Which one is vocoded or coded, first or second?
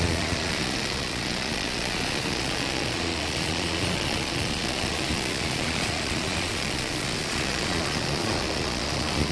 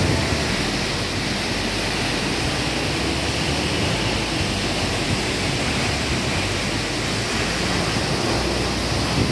first